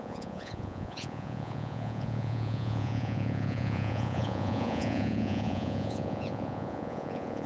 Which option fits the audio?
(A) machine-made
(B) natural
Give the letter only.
A